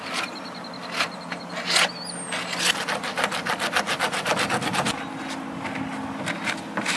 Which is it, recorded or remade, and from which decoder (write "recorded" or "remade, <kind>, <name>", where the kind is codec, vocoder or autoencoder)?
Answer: recorded